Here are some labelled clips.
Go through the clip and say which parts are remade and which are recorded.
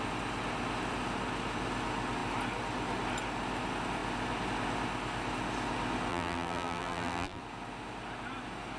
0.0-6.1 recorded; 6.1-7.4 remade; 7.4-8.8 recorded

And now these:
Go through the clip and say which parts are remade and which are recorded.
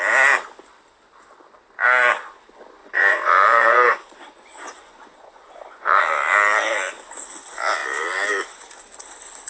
0.0-2.8 recorded; 2.8-6.0 remade; 6.0-9.5 recorded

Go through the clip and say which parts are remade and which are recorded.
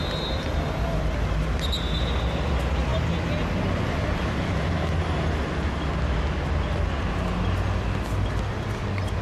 0.0-9.2 recorded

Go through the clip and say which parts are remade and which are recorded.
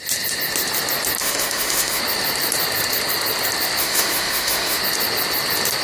0.0-1.2 recorded; 1.2-2.0 remade; 2.0-3.8 recorded; 3.8-4.8 remade; 4.8-5.8 recorded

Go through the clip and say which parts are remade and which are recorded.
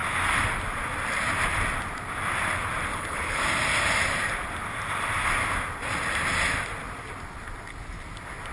0.0-2.9 recorded; 2.9-3.4 remade; 3.4-8.5 recorded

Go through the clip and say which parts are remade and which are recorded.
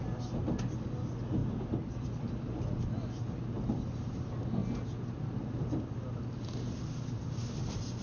0.0-8.0 recorded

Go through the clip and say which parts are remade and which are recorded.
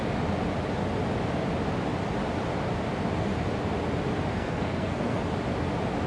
0.0-4.3 recorded; 4.3-5.2 remade; 5.2-6.1 recorded